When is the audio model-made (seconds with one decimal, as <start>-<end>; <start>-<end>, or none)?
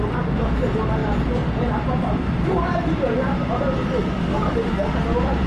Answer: 4.0-5.0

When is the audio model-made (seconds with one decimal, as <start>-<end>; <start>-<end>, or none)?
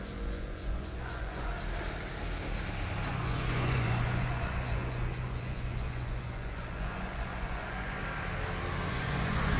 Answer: 0.0-1.5; 3.1-8.0; 8.9-9.6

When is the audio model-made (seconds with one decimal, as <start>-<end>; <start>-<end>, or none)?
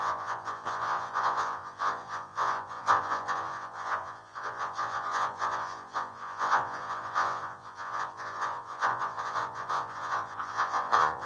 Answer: 0.0-11.3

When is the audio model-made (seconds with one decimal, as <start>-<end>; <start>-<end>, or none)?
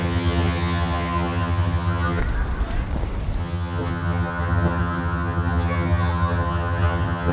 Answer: 0.0-2.2; 3.4-7.3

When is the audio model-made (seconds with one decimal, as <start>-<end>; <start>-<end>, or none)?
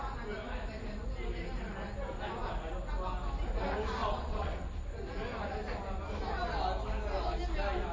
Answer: 4.0-4.7